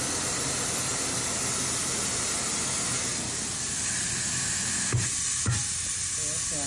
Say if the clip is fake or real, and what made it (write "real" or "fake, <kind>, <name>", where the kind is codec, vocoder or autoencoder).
real